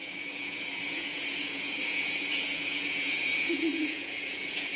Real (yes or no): no